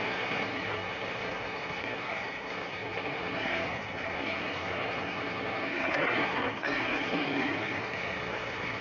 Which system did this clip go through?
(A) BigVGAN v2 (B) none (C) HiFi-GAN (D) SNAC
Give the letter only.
D